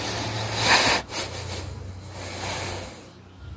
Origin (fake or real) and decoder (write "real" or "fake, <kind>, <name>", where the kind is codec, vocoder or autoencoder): real